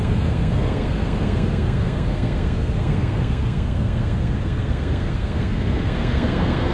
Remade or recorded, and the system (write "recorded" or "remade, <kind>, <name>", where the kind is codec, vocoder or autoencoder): remade, codec, SNAC